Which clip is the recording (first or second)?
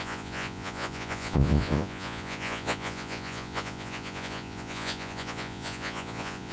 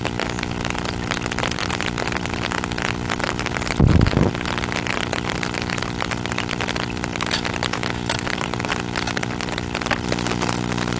second